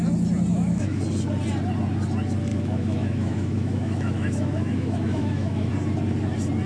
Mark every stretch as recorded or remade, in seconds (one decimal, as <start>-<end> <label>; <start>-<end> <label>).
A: 0.0-0.5 recorded; 0.5-1.0 remade; 1.0-2.5 recorded; 2.5-5.7 remade; 5.7-6.7 recorded